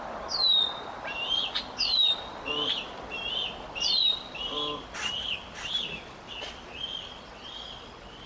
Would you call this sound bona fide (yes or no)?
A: yes